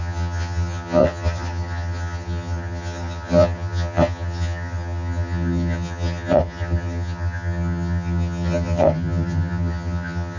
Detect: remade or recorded remade